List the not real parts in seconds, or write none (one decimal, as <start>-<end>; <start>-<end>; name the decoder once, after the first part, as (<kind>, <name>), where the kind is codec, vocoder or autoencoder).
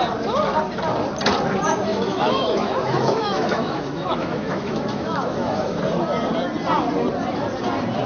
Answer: 1.9-5.8 (autoencoder, DAC-VAE)